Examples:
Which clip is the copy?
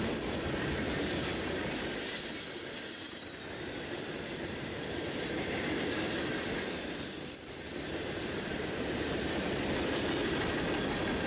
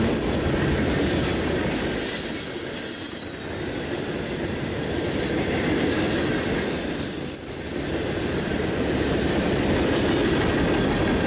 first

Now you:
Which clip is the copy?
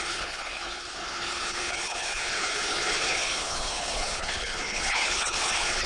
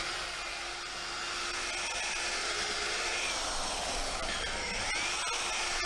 first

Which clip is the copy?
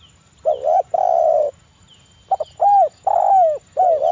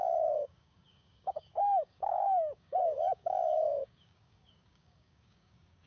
second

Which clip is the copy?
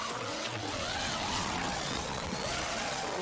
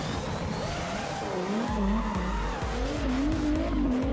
first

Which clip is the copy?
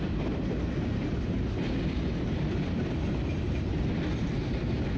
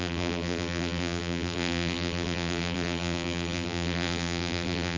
second